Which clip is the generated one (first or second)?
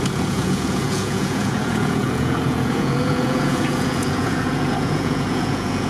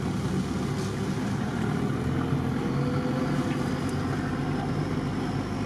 first